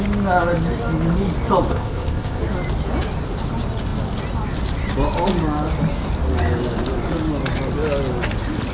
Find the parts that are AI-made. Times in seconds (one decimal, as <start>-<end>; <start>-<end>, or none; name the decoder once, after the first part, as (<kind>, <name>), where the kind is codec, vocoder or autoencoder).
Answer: 1.7-2.4 (codec, ZipCodec)